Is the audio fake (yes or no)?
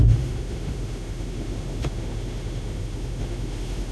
yes